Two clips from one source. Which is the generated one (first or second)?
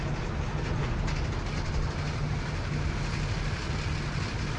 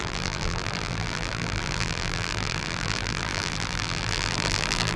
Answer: second